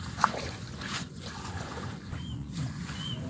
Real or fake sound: fake